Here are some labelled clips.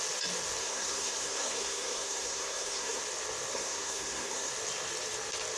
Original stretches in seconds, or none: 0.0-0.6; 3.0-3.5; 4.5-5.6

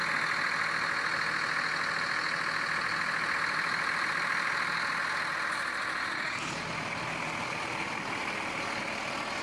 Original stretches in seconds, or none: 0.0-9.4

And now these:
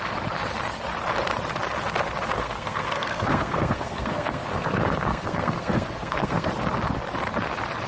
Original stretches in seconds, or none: 0.0-2.4; 6.5-7.9